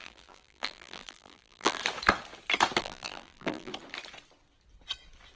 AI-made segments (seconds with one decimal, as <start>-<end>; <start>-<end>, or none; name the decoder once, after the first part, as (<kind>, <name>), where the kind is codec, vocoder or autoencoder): 0.0-1.8 (vocoder, BigVGAN v2); 2.8-3.7